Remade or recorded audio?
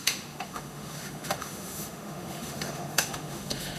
remade